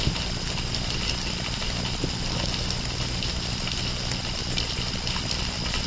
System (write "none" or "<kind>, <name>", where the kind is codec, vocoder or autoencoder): none